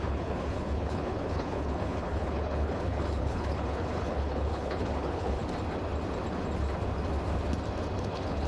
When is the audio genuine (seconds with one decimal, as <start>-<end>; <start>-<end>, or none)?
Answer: 5.4-8.0